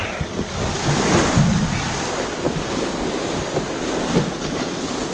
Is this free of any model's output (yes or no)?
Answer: yes